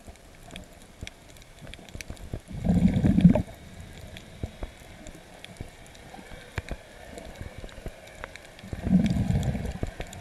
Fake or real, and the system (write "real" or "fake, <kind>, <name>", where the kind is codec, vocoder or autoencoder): real